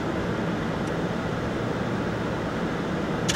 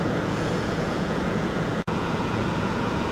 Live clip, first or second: first